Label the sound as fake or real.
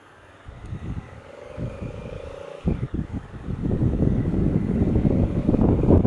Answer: fake